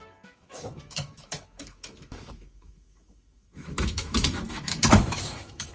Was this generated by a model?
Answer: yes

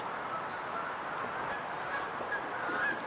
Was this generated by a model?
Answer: no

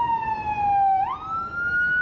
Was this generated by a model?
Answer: no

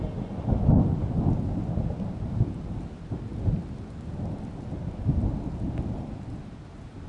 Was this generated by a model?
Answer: no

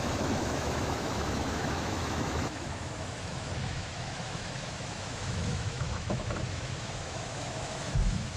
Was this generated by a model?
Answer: yes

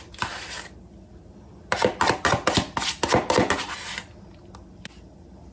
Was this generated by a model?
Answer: no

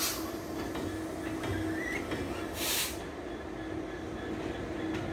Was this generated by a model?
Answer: no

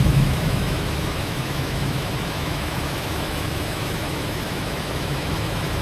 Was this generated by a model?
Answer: yes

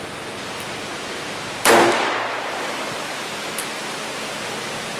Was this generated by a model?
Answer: no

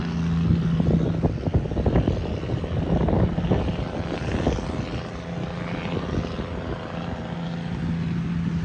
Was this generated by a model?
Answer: no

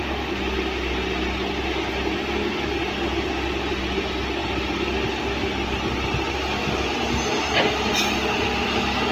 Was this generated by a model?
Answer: no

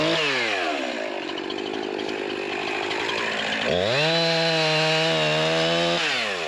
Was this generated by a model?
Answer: no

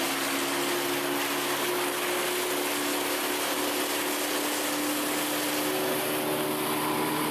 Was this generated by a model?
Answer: no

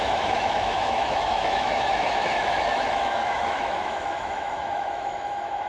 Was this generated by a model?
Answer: yes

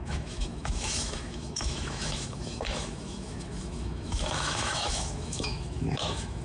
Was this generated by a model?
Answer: yes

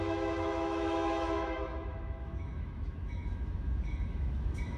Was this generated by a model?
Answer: yes